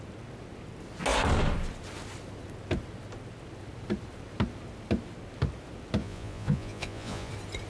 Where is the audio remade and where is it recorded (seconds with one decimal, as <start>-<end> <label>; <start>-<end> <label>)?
0.0-6.0 recorded; 6.0-7.3 remade; 7.3-7.7 recorded